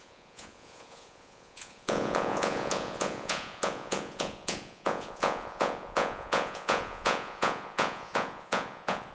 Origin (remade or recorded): remade